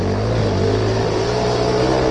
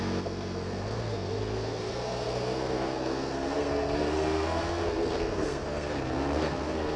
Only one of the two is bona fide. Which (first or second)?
first